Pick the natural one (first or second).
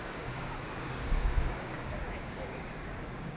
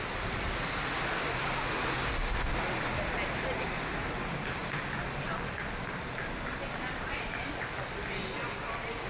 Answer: second